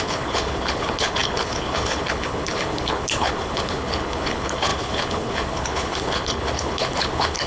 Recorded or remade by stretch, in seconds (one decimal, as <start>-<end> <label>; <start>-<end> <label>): 0.0-7.5 remade